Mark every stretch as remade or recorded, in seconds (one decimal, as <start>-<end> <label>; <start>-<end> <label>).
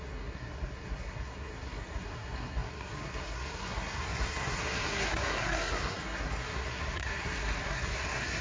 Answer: 0.0-8.4 remade